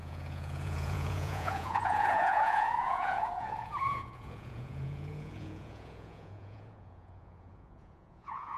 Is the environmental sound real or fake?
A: fake